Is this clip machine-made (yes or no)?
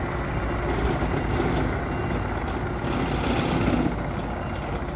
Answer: no